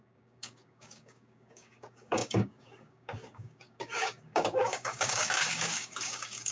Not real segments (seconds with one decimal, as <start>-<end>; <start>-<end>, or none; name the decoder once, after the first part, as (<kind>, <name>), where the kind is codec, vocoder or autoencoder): 0.0-6.5 (codec, DAC)